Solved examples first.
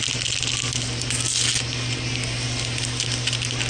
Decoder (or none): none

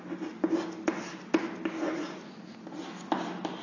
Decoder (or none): none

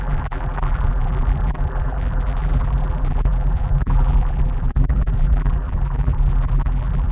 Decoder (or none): vocoder, BigVGAN v2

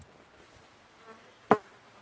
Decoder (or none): none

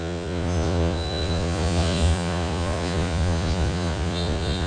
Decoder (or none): vocoder, Vocos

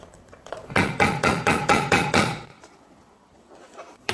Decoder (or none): vocoder, Vocos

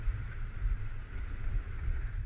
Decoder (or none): vocoder, Vocos